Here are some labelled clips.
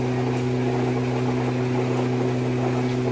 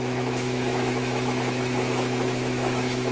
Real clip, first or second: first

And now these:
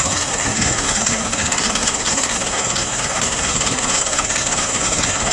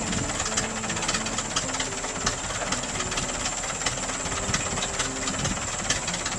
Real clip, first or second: second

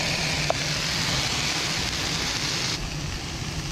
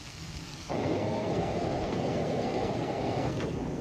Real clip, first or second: first